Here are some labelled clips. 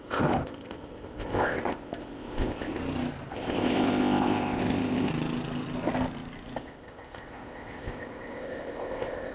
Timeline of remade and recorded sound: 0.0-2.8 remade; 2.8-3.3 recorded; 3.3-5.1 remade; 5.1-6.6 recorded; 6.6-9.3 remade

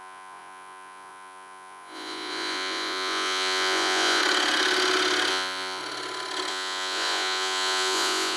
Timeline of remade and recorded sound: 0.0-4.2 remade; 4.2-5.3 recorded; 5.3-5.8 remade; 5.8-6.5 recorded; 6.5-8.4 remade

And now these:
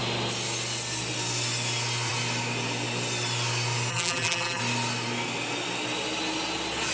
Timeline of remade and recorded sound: 0.0-3.9 recorded; 3.9-4.6 remade; 4.6-6.9 recorded

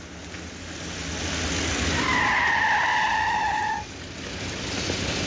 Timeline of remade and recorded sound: 0.0-3.1 recorded; 3.1-3.7 remade; 3.7-5.3 recorded